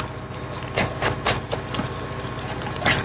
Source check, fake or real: real